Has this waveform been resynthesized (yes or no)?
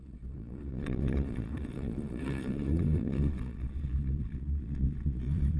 yes